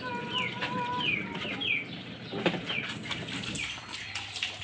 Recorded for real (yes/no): yes